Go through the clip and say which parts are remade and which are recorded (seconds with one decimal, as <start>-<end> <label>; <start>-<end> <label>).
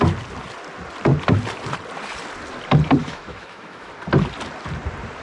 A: 0.0-3.0 recorded; 3.0-3.9 remade; 3.9-5.2 recorded